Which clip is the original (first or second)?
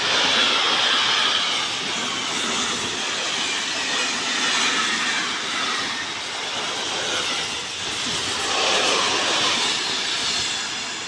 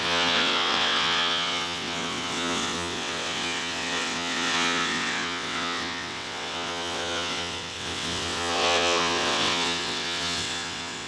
first